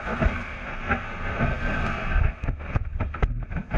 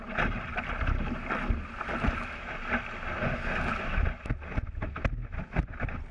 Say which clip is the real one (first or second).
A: second